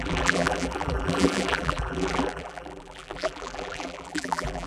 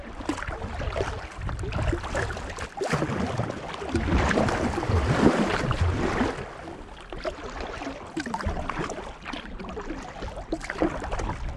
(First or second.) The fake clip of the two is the first